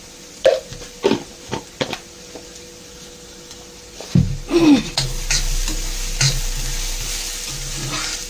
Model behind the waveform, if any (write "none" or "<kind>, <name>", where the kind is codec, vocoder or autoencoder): vocoder, BigVGAN v2